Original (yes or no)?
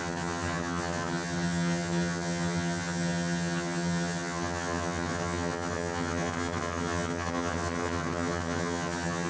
no